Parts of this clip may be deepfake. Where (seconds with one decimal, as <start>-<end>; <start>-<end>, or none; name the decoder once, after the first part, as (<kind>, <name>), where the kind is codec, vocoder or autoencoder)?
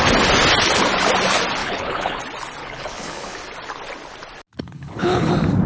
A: 1.6-2.2 (codec, HILCodec); 2.6-3.4; 4.6-5.3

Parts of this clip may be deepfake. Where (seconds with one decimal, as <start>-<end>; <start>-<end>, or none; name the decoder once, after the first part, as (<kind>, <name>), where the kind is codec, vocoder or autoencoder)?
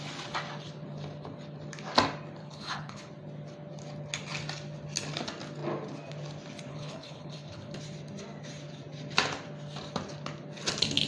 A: 2.4-3.1 (codec, HILCodec); 6.7-7.8